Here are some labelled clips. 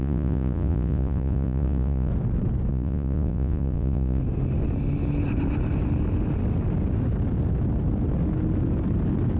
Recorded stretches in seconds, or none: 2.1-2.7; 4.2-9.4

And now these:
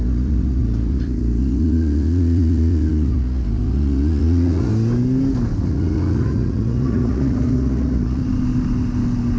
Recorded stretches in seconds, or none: 4.7-5.6; 8.2-9.4

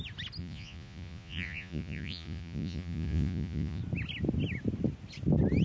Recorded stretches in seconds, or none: 0.0-0.4; 3.8-5.6

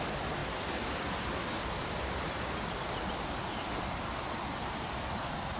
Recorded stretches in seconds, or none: 0.0-5.6

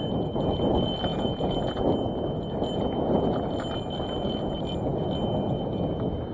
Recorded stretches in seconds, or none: 0.0-1.1; 1.9-6.3

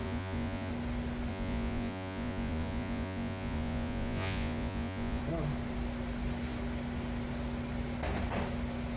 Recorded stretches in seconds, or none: 0.7-1.3; 5.2-9.0

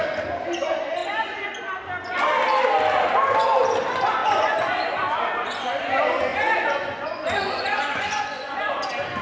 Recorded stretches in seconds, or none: 0.0-4.2; 4.7-6.3; 8.6-9.2

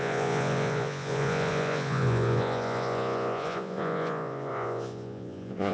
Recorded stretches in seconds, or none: none